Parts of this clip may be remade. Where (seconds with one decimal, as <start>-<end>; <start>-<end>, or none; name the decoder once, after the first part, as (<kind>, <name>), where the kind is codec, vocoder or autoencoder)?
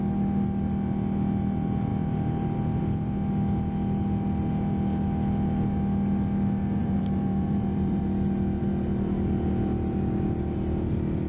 6.8-8.0 (vocoder, BigVGAN v2)